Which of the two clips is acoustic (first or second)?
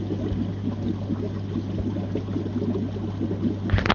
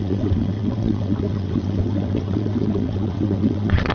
first